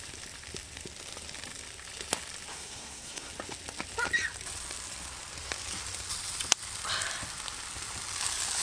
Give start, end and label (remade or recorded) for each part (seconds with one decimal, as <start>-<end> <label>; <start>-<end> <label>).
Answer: 0.0-2.5 recorded; 2.5-3.3 remade; 3.3-8.6 recorded